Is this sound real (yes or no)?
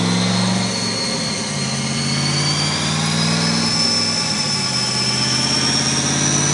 yes